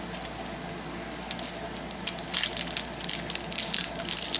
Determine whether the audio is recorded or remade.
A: recorded